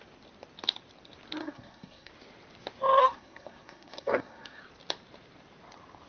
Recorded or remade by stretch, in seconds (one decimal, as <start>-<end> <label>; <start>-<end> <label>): 0.0-1.4 recorded; 1.4-2.1 remade; 2.1-3.0 recorded; 3.0-4.6 remade; 4.6-6.1 recorded